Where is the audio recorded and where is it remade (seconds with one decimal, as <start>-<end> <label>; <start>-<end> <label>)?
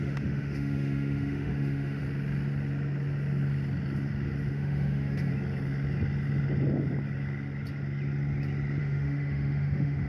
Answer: 0.0-2.0 remade; 2.0-4.5 recorded; 4.5-5.3 remade; 5.3-8.8 recorded; 8.8-10.1 remade